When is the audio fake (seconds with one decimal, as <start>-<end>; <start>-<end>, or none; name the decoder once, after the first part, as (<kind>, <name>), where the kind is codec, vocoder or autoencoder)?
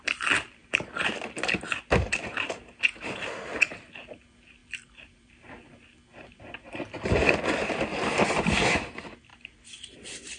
4.6-5.3 (vocoder, BigVGAN v2); 9.3-10.4